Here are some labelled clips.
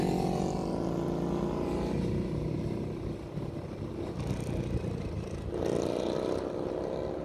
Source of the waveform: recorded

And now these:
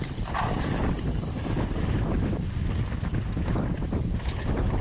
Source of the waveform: recorded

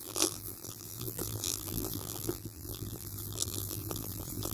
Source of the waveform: remade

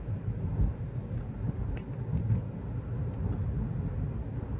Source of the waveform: recorded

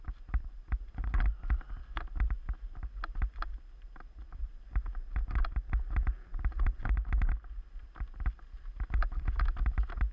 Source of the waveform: recorded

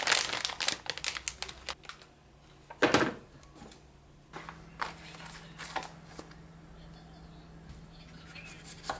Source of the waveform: recorded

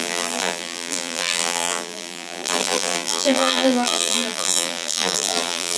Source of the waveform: remade